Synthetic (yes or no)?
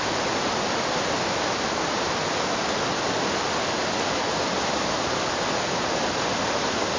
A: no